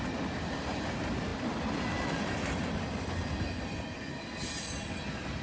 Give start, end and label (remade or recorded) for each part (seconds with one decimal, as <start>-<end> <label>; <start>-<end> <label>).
0.0-5.4 recorded